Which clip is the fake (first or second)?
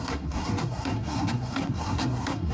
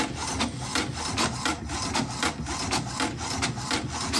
first